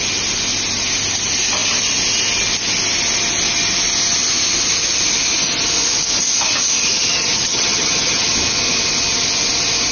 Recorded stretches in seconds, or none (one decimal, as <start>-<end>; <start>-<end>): 0.0-6.9; 8.3-9.9